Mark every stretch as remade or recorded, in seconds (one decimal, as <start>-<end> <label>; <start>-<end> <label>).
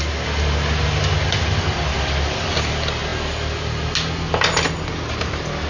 0.0-5.7 recorded